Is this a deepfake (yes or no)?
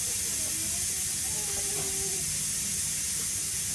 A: no